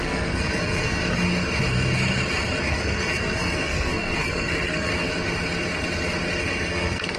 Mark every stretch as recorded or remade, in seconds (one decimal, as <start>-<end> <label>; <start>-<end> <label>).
0.0-1.0 remade; 1.0-2.6 recorded; 2.6-4.9 remade; 4.9-6.4 recorded; 6.4-7.2 remade